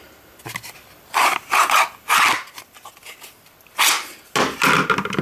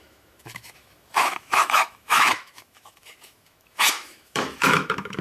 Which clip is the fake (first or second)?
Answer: second